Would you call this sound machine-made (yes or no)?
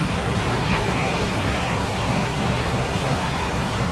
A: yes